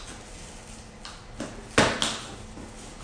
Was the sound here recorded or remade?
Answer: recorded